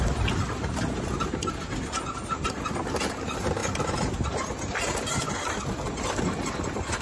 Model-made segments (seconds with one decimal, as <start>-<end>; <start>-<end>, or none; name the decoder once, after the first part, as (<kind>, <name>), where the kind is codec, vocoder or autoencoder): none